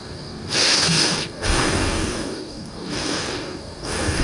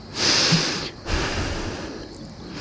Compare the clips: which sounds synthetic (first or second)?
first